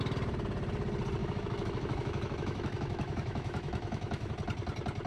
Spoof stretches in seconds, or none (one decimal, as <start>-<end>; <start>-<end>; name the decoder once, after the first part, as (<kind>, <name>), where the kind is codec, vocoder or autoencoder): 1.2-4.3 (autoencoder, DAC-VAE)